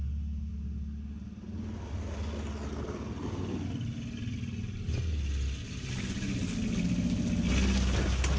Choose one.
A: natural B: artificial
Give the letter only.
A